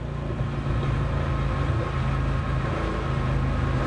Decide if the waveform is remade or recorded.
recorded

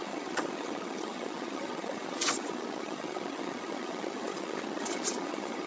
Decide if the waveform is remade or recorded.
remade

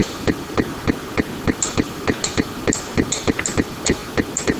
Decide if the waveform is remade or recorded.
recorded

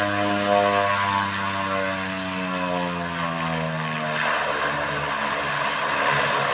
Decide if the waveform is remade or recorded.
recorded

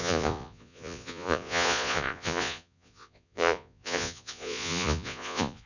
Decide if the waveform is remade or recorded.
remade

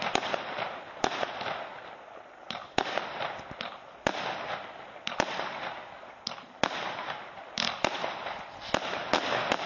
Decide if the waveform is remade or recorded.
recorded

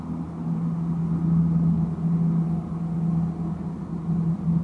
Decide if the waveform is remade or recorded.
recorded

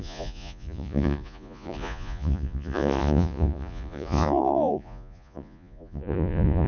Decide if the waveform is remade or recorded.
remade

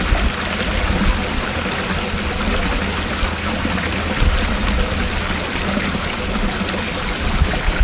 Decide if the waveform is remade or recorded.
recorded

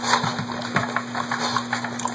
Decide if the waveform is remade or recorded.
recorded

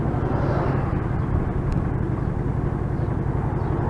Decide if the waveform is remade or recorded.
recorded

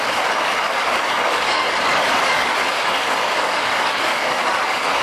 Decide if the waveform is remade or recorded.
remade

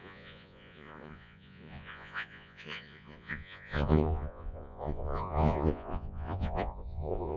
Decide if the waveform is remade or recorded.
remade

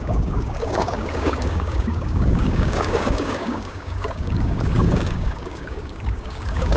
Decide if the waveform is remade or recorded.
remade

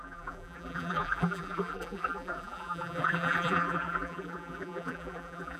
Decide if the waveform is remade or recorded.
remade